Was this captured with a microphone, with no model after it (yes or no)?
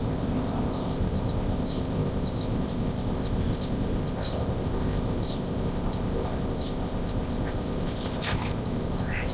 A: no